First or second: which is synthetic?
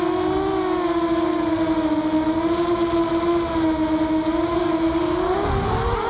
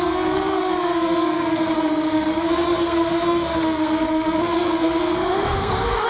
second